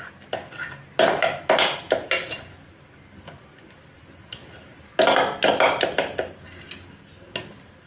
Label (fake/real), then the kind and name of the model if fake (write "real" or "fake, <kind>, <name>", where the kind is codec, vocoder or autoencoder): real